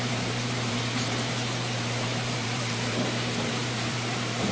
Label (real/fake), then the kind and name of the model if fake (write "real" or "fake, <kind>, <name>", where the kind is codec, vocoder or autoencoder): fake, vocoder, BigVGAN v2